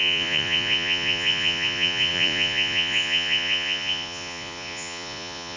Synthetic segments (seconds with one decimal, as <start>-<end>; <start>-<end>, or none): 0.0-5.6